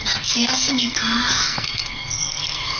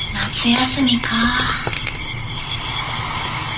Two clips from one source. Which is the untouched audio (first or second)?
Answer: second